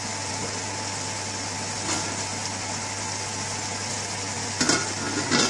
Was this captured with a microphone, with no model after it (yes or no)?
yes